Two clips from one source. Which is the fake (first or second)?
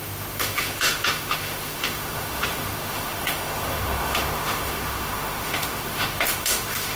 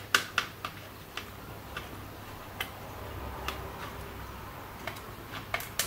first